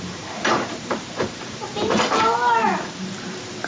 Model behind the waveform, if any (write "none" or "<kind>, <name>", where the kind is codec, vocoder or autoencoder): vocoder, BigVGAN v2